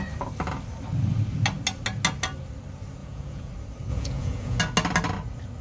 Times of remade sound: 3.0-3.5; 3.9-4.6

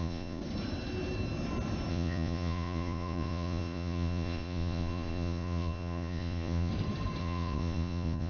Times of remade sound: 0.0-0.4; 1.9-6.7; 7.2-8.3

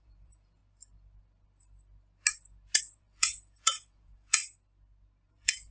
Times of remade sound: 0.0-0.6; 2.8-4.4; 5.3-5.7

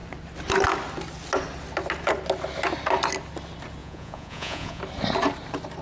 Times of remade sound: 3.8-4.8